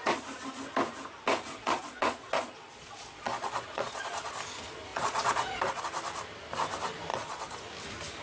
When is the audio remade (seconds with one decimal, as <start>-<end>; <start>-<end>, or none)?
1.6-4.3; 4.9-5.8; 7.1-7.6